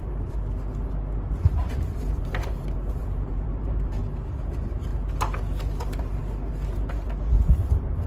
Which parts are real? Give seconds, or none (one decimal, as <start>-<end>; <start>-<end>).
0.4-1.5; 4.0-4.5; 4.9-5.8; 6.2-7.3